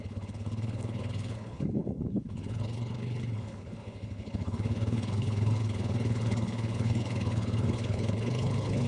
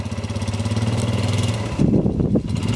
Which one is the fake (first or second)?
first